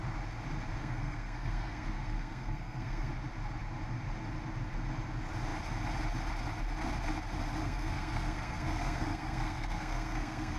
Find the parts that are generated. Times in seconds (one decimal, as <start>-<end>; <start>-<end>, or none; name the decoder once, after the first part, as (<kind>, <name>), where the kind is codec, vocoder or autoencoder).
0.8-3.1 (codec, SNAC); 7.6-10.6